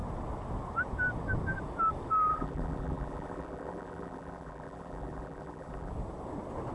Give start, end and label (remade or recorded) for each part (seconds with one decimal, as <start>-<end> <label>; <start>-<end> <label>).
0.0-2.3 recorded; 2.3-5.9 remade; 5.9-6.7 recorded